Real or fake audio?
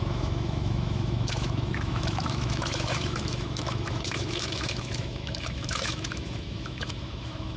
fake